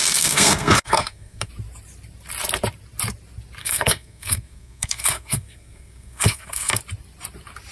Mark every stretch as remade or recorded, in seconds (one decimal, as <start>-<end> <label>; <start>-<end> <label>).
0.0-1.5 remade; 1.5-3.6 recorded; 3.6-6.8 remade; 6.8-7.7 recorded